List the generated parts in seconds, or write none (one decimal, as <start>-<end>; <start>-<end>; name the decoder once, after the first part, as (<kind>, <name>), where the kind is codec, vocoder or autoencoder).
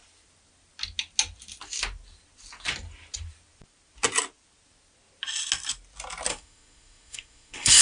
6.3-7.8 (codec, SNAC)